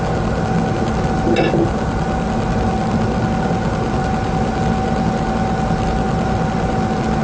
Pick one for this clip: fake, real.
real